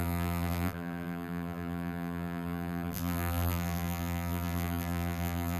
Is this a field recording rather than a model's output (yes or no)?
no